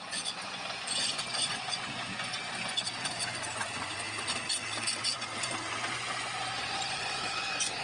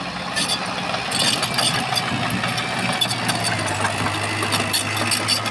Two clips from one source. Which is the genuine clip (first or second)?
second